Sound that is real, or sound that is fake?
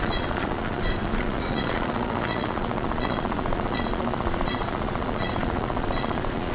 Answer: fake